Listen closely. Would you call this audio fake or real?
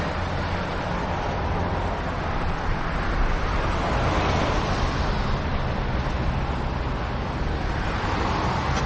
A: real